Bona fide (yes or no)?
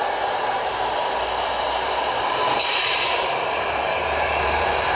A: no